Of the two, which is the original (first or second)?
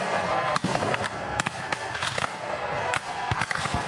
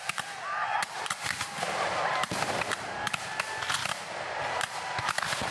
second